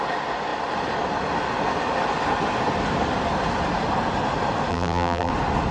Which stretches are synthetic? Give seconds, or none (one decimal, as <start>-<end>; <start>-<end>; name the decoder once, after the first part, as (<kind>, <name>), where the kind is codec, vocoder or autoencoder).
4.7-5.3 (vocoder, BigVGAN v2)